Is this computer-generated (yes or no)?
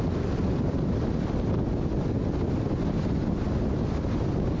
no